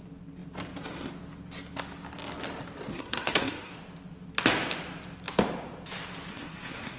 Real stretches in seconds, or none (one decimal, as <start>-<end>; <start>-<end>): 0.0-2.9; 3.7-6.3